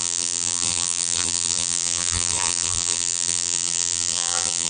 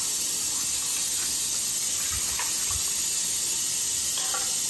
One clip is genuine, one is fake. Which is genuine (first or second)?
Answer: second